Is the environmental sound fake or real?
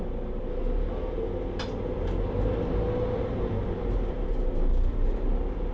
real